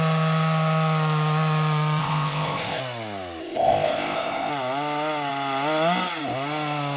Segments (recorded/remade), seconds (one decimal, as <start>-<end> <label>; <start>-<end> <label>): 0.0-2.0 recorded; 2.0-2.8 remade; 2.8-3.4 recorded; 3.4-4.5 remade; 4.5-7.0 recorded